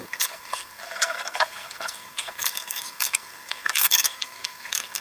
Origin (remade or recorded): remade